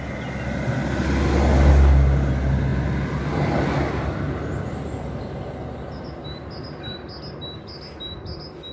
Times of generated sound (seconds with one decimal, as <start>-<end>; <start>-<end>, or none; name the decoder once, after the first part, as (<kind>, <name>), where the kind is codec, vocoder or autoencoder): none